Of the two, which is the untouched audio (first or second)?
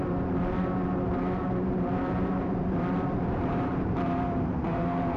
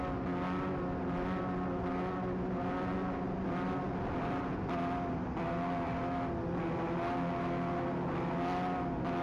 second